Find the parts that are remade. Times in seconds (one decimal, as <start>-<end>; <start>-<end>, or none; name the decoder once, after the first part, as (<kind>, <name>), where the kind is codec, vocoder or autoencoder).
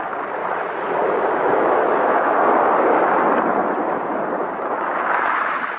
0.4-2.3 (autoencoder, DAC-VAE); 4.4-5.8